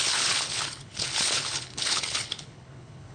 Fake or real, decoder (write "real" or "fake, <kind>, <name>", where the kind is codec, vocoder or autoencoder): fake, codec, HILCodec